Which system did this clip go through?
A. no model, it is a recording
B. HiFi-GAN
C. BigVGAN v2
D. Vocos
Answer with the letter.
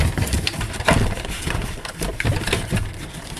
C